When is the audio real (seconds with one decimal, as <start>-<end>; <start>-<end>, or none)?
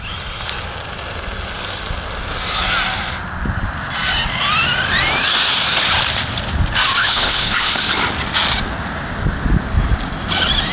0.0-7.0; 7.7-10.7